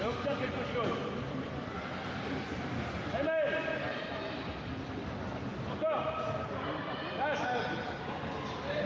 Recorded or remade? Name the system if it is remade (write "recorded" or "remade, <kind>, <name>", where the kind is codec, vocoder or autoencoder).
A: recorded